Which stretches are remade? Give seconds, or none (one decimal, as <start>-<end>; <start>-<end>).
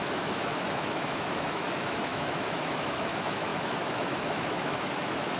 0.0-5.4